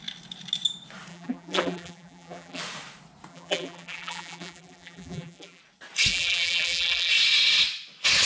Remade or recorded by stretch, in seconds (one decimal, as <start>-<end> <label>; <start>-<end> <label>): 0.0-1.1 recorded; 1.1-2.6 remade; 2.6-3.3 recorded; 3.3-5.6 remade; 5.6-6.1 recorded; 6.1-7.1 remade; 7.1-8.3 recorded